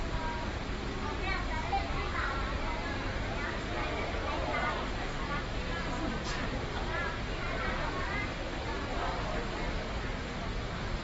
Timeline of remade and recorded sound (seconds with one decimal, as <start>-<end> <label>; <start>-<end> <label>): 0.0-11.0 recorded